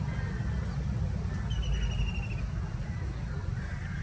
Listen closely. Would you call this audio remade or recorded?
recorded